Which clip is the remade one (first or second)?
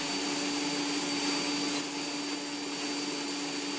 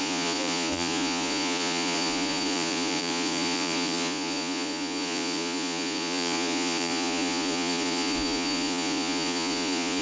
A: second